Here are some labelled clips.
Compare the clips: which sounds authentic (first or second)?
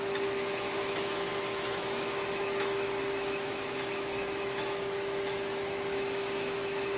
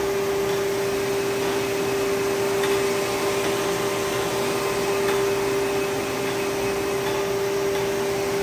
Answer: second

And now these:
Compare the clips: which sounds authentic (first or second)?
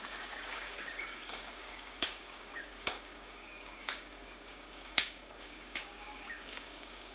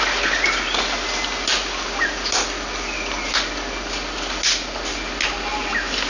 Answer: second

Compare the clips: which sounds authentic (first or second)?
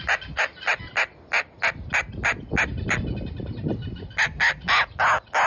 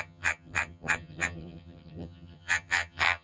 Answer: first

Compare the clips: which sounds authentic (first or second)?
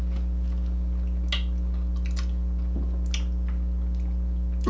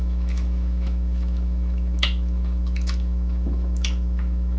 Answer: first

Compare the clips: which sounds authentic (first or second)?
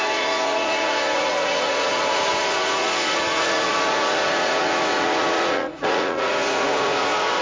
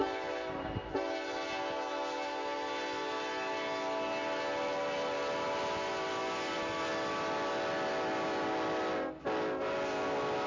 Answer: second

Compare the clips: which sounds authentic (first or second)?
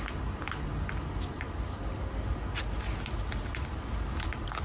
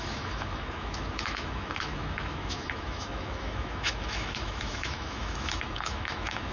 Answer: first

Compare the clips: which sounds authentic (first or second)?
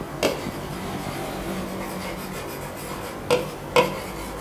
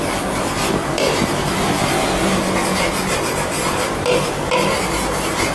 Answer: first